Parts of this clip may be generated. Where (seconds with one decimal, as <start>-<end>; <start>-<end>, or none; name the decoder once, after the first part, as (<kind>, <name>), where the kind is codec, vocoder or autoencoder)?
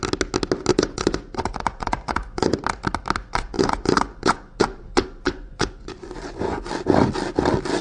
0.7-2.6 (vocoder, Vocos); 3.2-6.7